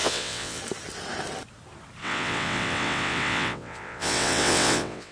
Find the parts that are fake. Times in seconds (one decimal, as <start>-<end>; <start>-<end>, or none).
0.0-0.6; 2.0-5.1